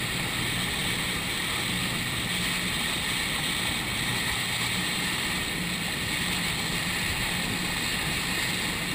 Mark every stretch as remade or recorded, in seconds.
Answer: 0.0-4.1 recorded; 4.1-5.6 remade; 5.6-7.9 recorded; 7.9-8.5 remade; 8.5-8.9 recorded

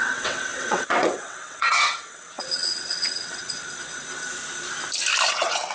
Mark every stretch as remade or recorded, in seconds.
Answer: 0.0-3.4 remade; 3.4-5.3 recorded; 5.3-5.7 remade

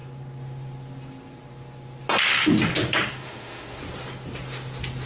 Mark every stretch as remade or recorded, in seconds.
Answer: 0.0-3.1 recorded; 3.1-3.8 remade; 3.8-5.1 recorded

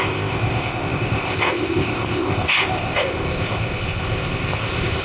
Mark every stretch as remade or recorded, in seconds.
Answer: 0.0-5.0 remade